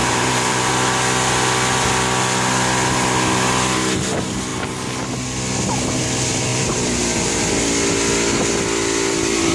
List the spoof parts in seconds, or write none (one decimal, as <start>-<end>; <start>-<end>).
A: 0.0-0.7; 6.5-7.6